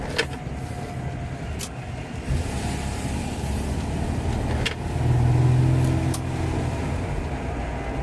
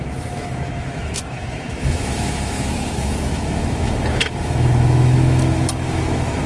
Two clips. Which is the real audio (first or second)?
first